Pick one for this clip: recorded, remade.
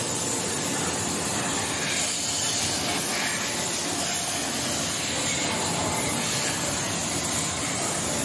recorded